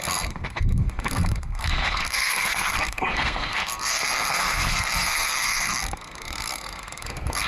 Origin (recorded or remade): remade